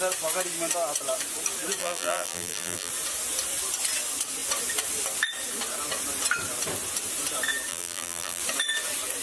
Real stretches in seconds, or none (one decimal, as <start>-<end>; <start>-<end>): 0.0-1.8; 2.9-7.7; 8.4-9.2